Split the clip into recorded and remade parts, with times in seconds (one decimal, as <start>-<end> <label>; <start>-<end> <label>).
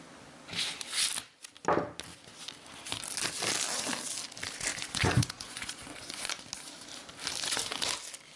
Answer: 0.0-4.7 recorded; 4.7-6.4 remade; 6.4-8.4 recorded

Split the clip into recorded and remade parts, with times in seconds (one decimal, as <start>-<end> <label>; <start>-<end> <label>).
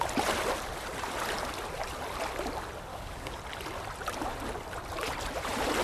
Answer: 0.0-2.9 recorded; 2.9-3.4 remade; 3.4-5.8 recorded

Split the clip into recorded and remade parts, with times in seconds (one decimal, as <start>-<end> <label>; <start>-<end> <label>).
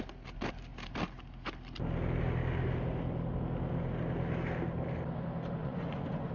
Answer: 0.0-5.6 recorded; 5.6-6.3 remade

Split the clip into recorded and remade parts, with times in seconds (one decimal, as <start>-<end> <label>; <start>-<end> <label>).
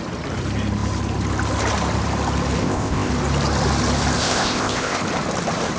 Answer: 0.0-2.6 recorded; 2.6-3.1 remade; 3.1-4.2 recorded; 4.2-5.0 remade; 5.0-5.8 recorded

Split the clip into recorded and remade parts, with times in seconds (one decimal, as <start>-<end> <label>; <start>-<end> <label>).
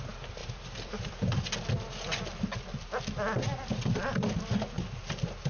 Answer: 0.0-0.4 recorded; 0.4-1.1 remade; 1.1-5.5 recorded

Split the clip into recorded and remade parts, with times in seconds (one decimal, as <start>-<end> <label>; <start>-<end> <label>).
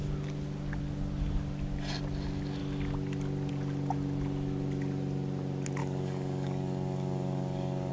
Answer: 0.0-5.8 recorded; 5.8-7.9 remade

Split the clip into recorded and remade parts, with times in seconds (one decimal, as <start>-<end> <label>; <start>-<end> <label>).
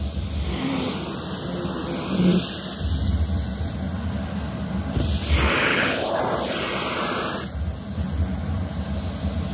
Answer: 0.0-5.7 recorded; 5.7-6.2 remade; 6.2-9.5 recorded